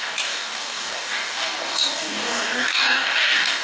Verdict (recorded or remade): remade